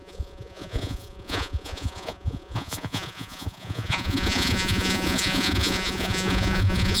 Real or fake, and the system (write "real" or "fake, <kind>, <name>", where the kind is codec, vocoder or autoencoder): fake, vocoder, Vocos